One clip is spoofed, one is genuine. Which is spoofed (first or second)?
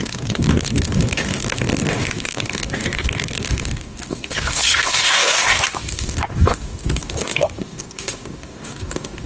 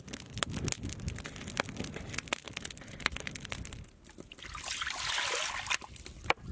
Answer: first